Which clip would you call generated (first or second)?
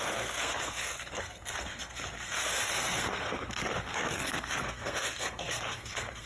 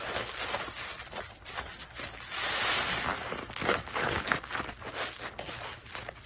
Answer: first